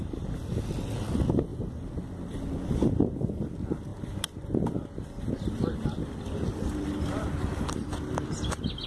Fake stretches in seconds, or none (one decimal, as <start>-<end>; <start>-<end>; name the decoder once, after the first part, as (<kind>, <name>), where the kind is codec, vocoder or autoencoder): none